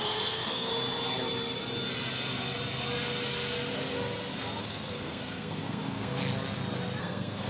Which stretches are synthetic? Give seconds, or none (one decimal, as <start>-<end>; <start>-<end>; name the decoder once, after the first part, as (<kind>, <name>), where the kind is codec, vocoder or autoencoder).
0.0-0.7 (codec, SNAC); 4.6-6.2; 7.0-7.5